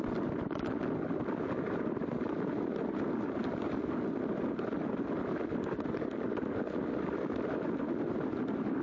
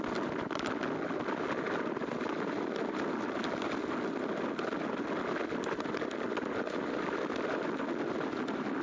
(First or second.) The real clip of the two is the second